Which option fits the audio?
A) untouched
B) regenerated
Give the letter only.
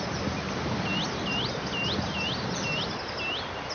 A